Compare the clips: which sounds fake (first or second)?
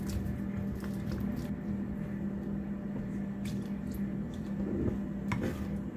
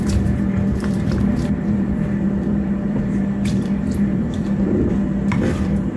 second